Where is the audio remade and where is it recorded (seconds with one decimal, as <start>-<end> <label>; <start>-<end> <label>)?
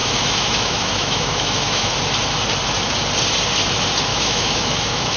0.0-1.9 remade; 1.9-4.1 recorded; 4.1-5.2 remade